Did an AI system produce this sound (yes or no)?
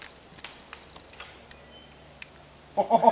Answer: no